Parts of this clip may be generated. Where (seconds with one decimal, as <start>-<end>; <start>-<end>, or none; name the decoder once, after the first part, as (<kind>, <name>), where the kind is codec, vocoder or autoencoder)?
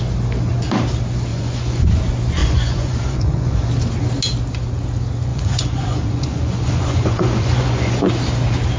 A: 1.3-1.9 (vocoder, Vocos); 2.4-3.7; 5.3-8.0